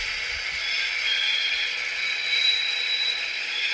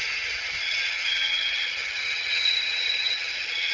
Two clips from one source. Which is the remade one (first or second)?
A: second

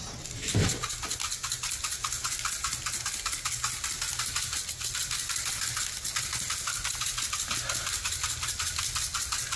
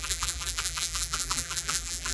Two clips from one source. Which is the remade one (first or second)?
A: second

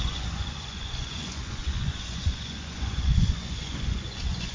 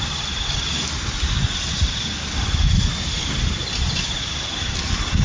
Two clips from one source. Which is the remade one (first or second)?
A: first